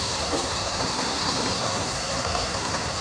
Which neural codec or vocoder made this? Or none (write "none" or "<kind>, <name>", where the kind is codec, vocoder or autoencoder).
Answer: codec, SNAC